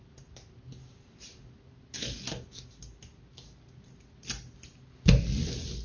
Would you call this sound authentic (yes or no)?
yes